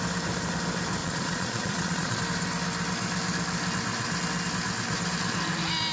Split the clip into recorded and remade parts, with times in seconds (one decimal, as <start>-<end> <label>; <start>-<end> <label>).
0.0-1.0 recorded; 1.0-2.2 remade; 2.2-5.9 recorded